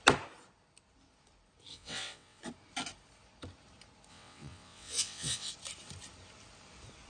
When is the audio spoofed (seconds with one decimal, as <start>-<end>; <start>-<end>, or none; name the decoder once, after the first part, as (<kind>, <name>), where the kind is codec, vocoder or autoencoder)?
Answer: 1.7-2.4 (vocoder, WaveNeXt); 4.1-5.5